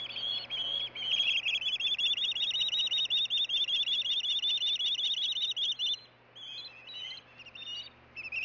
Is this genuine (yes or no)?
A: yes